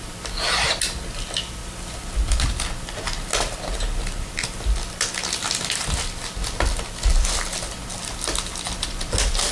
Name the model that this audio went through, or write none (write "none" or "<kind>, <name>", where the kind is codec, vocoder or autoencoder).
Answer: none